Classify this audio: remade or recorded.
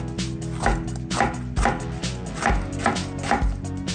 recorded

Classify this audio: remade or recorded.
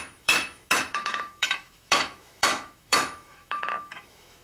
remade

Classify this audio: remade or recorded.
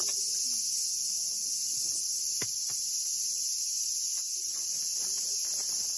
recorded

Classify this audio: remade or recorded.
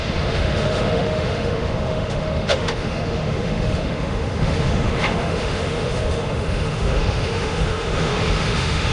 remade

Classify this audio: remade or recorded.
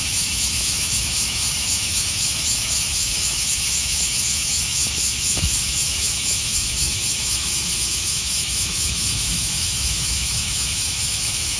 remade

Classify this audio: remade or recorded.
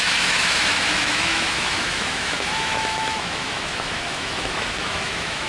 remade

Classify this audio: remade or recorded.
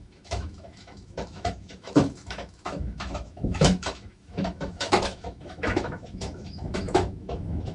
remade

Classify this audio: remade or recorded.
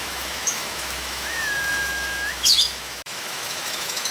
remade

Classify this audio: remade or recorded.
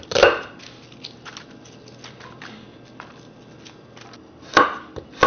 recorded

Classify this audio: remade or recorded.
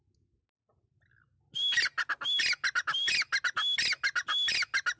recorded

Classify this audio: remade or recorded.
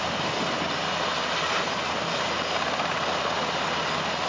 recorded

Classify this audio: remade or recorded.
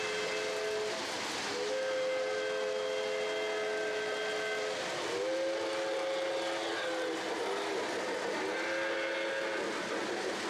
recorded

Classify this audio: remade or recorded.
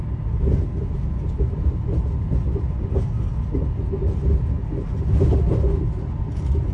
recorded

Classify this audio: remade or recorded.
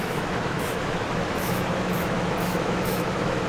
remade